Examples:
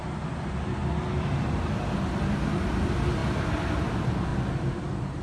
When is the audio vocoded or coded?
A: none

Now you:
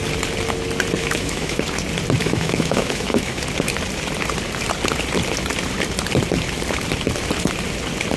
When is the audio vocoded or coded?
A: 1.0-1.6 (autoencoder, DAC-VAE); 2.2-3.4

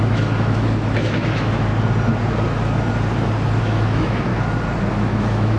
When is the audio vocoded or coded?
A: 0.0-1.7 (autoencoder, DAC-VAE); 3.6-4.3; 4.9-5.6

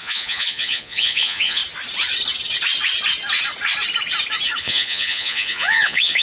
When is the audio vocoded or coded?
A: 0.0-1.6 (vocoder, Vocos); 4.6-6.2

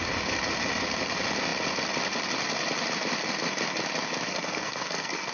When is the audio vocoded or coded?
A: 4.3-5.3 (codec, SNAC)

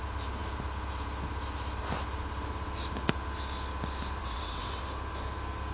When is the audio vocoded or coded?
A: 4.2-4.8 (vocoder, WaveNeXt)